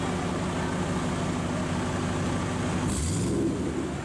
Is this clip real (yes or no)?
yes